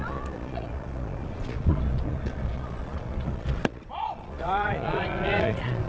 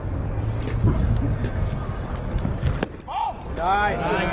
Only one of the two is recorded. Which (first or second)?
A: second